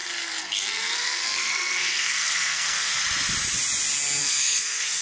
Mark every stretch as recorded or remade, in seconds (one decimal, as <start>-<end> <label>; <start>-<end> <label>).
0.0-3.0 remade; 3.0-4.2 recorded; 4.2-5.0 remade